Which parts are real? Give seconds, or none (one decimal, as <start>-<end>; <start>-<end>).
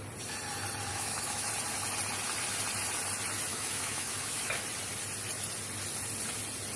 0.0-0.9; 1.5-3.5; 4.6-6.8